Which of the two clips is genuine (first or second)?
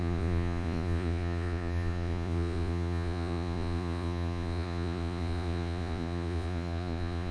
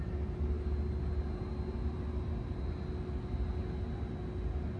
second